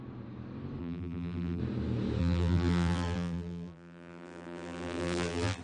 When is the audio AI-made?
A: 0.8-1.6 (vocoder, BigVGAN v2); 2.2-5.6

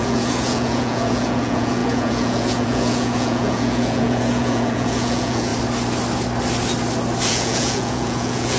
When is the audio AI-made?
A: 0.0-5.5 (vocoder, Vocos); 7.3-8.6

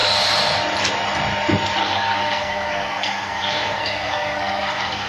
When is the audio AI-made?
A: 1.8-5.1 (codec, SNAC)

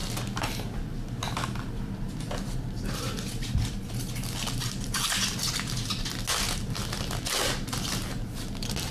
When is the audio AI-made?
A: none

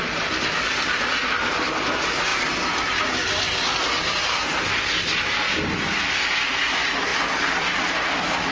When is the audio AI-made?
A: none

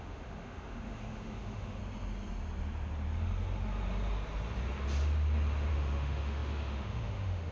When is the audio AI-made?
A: 0.0-1.8 (autoencoder, DAC-VAE); 5.7-7.5

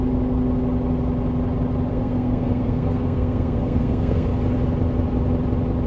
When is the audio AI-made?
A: 1.9-4.3 (codec, SNAC)

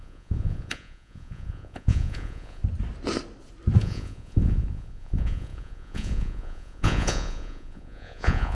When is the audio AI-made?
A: 0.0-2.6 (vocoder, Vocos); 3.8-8.5